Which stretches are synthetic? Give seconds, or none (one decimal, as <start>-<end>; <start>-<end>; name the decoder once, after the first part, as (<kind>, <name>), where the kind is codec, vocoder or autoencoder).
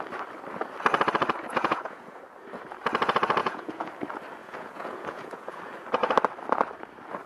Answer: 1.5-2.2 (vocoder, Vocos); 3.4-3.9; 4.4-5.6